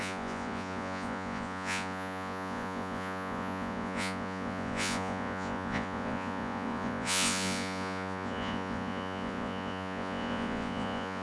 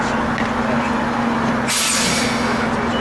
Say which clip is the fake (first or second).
first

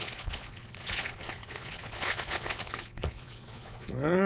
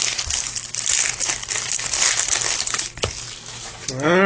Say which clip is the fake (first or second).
first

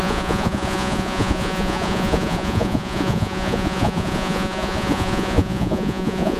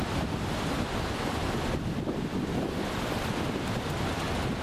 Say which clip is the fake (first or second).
first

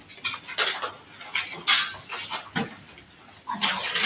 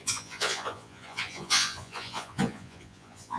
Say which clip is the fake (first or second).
second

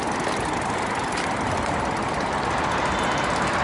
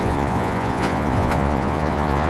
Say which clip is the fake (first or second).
second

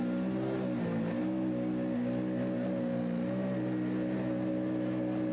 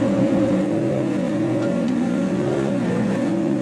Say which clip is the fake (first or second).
second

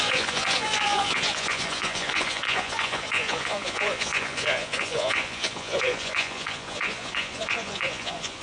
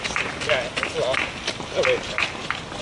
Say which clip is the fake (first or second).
first